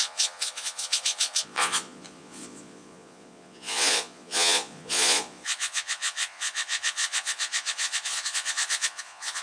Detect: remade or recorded remade